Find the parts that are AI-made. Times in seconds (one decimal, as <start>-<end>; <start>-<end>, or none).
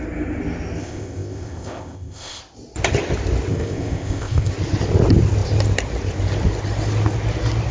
0.8-2.4; 3.5-4.5